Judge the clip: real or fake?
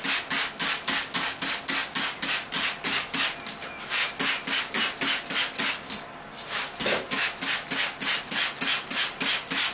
real